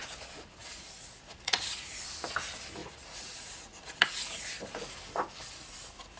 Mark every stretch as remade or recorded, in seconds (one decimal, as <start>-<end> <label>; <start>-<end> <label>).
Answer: 0.0-0.6 recorded; 0.6-2.0 remade; 2.0-2.8 recorded; 2.8-4.8 remade; 4.8-6.2 recorded